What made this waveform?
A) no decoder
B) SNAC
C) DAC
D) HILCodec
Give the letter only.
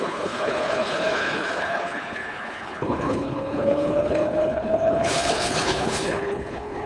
D